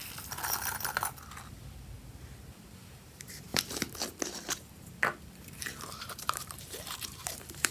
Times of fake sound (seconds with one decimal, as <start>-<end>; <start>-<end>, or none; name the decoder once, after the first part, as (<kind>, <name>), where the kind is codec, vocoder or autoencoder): 2.9-3.5 (vocoder, BigVGAN v2); 5.3-7.7